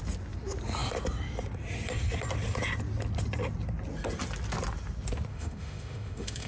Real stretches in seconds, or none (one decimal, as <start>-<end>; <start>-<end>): 0.0-5.3